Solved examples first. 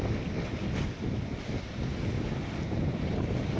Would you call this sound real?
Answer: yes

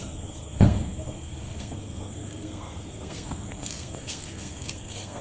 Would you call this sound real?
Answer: no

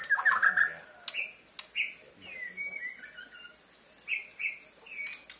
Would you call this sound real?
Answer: yes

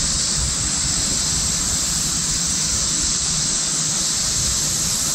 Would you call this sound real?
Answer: yes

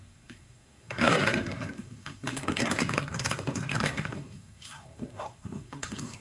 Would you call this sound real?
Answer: no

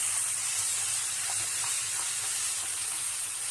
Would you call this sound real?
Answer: no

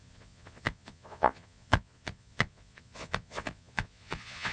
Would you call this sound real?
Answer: no